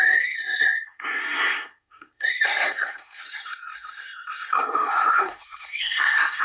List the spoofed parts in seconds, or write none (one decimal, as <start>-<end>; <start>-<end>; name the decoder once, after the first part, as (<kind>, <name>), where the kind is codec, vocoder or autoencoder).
0.0-6.4 (codec, SNAC)